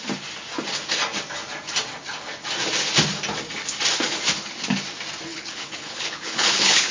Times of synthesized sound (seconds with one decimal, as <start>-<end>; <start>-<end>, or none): 5.3-6.9